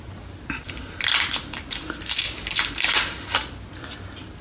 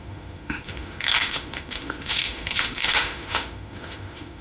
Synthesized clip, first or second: second